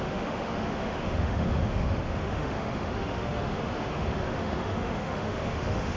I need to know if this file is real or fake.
fake